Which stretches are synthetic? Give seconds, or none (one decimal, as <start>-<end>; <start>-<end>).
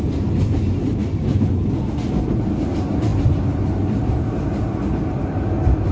none